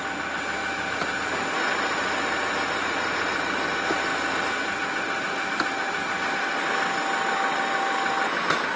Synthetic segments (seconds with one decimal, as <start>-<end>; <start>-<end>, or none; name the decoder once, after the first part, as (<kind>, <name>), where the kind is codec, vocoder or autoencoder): none